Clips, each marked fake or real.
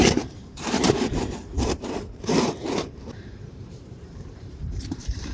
fake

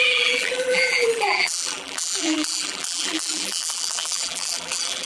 fake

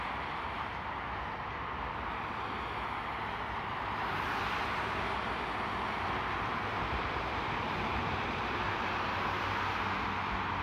real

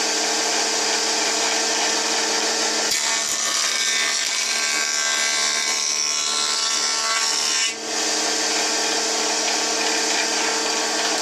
real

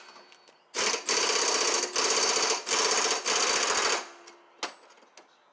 real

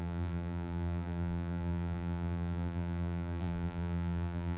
fake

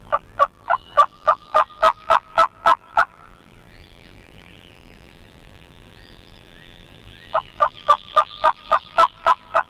fake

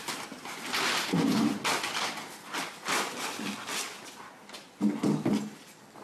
real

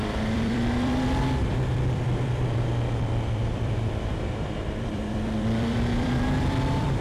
fake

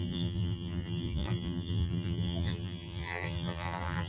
fake